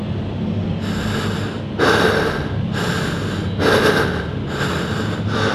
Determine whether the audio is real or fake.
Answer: real